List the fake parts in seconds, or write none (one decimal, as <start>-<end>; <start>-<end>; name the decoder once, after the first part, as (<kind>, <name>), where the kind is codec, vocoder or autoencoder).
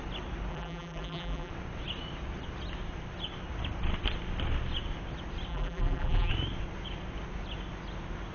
0.5-1.5 (vocoder, BigVGAN v2); 5.5-6.3